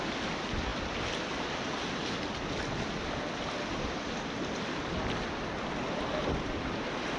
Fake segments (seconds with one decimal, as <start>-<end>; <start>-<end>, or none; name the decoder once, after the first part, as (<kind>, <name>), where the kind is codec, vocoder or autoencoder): none